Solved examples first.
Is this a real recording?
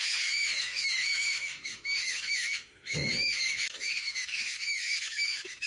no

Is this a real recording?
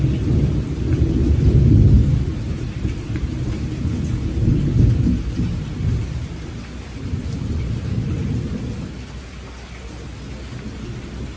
yes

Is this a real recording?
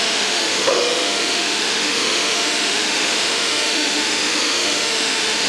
no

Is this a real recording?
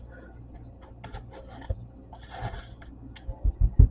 yes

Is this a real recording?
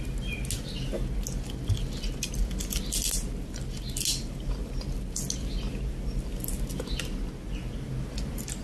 yes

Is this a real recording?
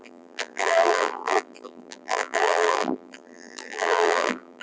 no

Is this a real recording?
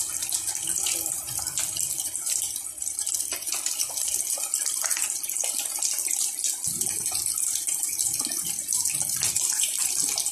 yes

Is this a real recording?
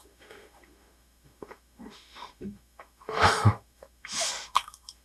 no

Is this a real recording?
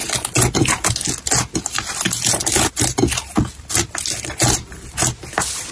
yes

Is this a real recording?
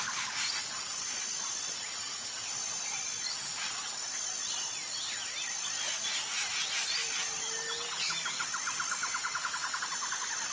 yes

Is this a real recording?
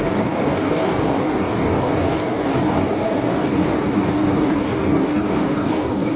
no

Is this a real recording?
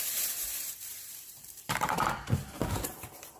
no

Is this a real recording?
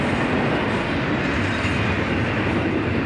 yes